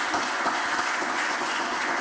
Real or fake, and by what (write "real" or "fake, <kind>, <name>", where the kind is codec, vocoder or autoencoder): fake, vocoder, Vocos